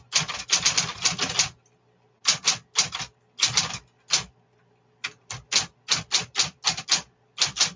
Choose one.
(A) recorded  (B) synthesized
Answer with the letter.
A